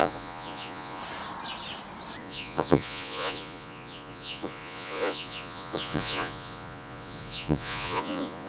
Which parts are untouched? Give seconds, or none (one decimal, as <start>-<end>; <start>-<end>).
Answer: 1.0-2.2